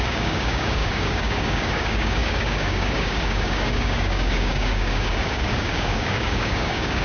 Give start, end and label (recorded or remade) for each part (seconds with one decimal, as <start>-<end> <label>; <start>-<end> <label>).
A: 0.0-7.0 remade